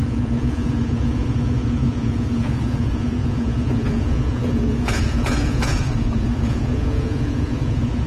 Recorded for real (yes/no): no